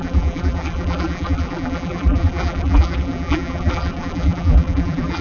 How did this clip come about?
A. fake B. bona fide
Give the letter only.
A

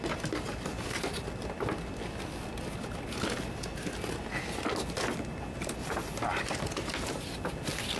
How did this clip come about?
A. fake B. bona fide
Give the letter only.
B